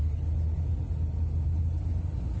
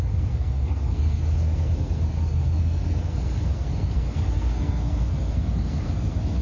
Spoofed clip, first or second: second